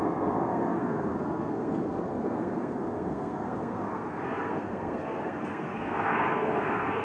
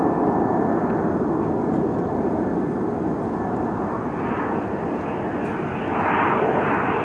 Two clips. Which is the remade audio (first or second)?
first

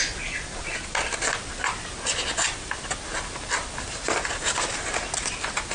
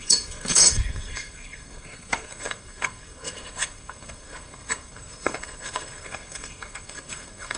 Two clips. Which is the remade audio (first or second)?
second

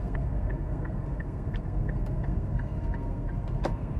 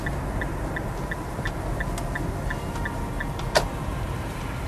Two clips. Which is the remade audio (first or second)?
first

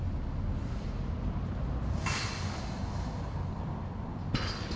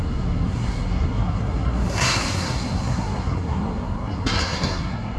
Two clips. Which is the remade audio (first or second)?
second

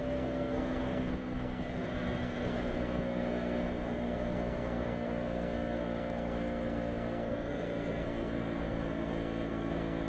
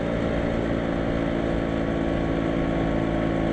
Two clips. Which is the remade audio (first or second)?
first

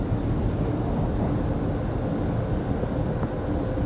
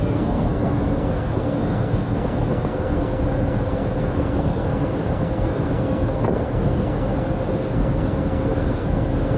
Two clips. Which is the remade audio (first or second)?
second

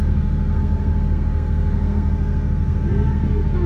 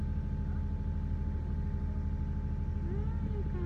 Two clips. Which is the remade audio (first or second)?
first